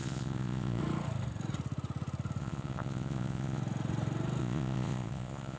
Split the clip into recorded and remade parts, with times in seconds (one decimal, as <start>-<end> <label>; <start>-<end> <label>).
0.0-0.8 remade; 0.8-2.4 recorded; 2.4-3.6 remade; 3.6-4.4 recorded; 4.4-5.6 remade